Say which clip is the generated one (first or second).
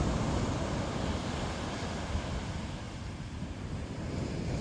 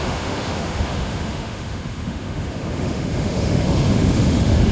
second